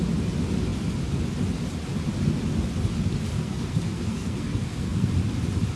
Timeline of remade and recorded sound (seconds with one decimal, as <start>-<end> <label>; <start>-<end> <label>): 0.0-3.3 recorded; 3.3-5.1 remade; 5.1-5.8 recorded